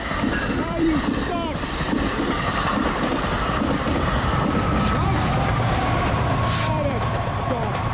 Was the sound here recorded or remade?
remade